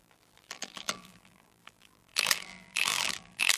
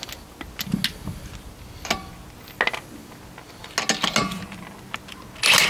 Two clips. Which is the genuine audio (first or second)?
second